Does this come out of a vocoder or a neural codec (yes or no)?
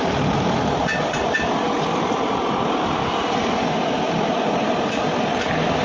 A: no